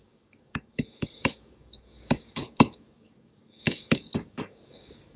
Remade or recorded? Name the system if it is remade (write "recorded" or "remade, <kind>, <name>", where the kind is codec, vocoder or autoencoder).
remade, codec, DAC